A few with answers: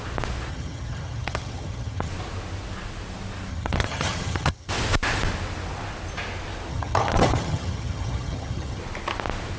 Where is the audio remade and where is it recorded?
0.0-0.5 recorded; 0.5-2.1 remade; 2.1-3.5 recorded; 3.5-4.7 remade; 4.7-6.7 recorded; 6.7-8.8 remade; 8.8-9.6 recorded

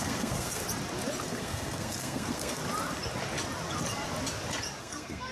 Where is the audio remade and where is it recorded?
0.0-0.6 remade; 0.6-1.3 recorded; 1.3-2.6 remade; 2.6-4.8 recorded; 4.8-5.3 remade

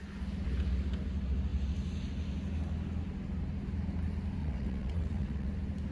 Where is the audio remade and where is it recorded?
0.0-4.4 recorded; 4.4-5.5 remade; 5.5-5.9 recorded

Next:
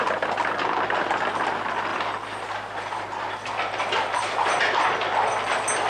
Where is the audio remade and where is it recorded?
0.0-5.9 recorded

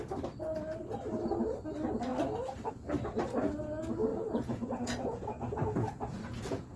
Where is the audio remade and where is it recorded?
0.0-4.1 recorded; 4.1-6.8 remade

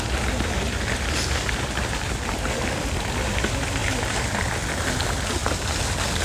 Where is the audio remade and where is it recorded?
0.0-5.4 recorded; 5.4-6.2 remade

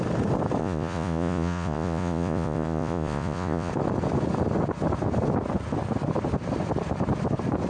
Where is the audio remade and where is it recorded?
0.0-0.6 recorded; 0.6-3.7 remade; 3.7-7.7 recorded

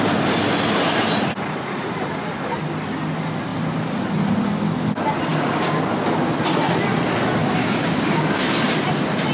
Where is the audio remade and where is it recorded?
0.0-5.3 recorded; 5.3-5.8 remade; 5.8-7.4 recorded; 7.4-8.6 remade; 8.6-9.3 recorded